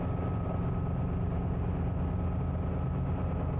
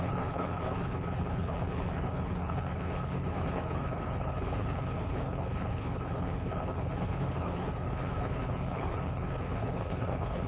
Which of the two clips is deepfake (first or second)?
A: second